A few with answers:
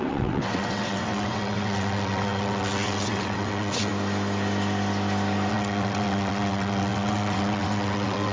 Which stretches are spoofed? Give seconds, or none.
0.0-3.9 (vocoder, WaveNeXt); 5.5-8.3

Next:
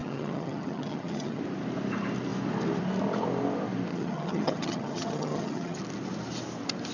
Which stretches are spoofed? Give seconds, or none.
0.0-1.4 (vocoder, HiFi-GAN); 3.9-5.8

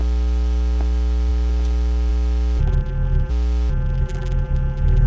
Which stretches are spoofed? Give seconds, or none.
2.6-3.3 (vocoder, BigVGAN v2); 3.7-5.1

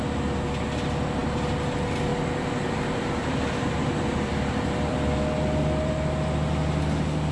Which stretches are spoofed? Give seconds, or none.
2.1-5.9 (vocoder, BigVGAN v2)